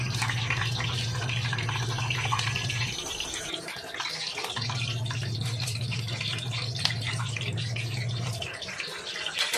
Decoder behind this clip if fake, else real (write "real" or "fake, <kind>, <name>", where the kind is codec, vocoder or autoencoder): real